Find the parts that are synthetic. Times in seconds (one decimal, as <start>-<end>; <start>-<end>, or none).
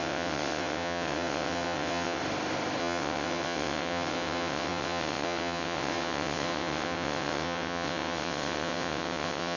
0.0-2.2; 2.8-9.6